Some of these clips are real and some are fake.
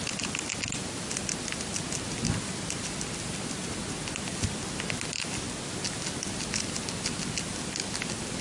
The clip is real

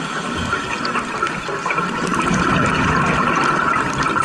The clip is real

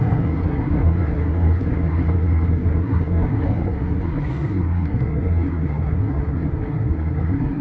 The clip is fake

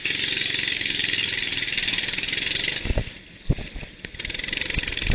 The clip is real